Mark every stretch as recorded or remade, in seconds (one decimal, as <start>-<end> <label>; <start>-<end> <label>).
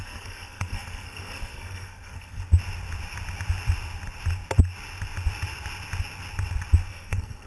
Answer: 0.0-2.4 remade; 2.4-6.9 recorded; 6.9-7.5 remade